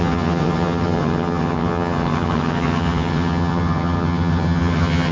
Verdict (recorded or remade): remade